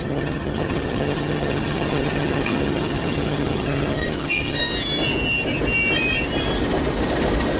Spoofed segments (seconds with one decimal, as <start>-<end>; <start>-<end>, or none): 0.0-4.6